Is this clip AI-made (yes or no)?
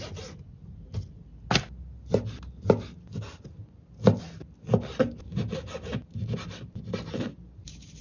no